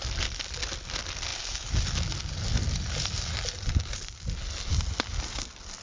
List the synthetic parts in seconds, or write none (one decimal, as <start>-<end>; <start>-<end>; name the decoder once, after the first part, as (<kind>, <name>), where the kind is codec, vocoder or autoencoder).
none